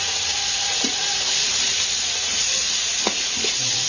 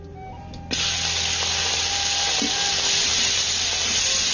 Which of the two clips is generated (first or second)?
first